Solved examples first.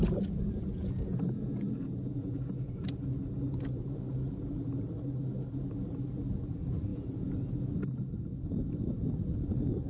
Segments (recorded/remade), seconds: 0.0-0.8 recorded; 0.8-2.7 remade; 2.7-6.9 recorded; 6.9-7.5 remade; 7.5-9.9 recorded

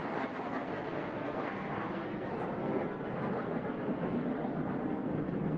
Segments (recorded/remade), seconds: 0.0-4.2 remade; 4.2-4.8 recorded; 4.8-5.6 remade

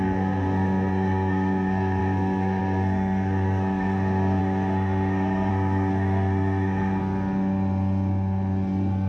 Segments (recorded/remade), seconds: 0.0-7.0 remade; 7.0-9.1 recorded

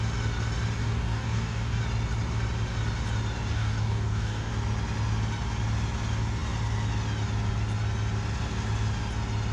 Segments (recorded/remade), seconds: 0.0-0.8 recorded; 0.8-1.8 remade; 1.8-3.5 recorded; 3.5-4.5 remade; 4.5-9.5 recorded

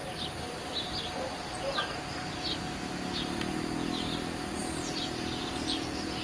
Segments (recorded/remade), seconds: 0.0-6.2 recorded